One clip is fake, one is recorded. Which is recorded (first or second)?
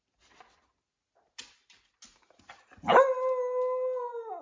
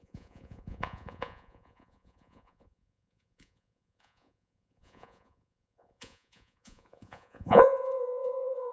first